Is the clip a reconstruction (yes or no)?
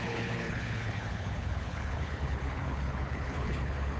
yes